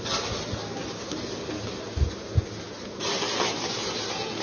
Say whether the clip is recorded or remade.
recorded